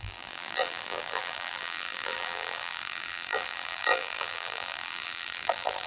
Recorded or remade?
remade